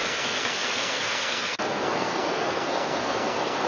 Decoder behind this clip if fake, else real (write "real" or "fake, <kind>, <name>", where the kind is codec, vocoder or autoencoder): fake, codec, SNAC